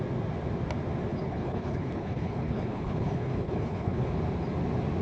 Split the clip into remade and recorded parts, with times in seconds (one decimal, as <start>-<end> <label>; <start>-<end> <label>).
0.0-1.1 recorded; 1.1-4.1 remade; 4.1-5.0 recorded